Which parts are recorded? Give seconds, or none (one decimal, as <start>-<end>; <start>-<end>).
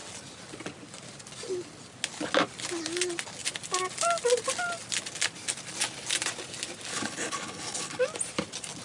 0.0-6.9; 8.0-8.8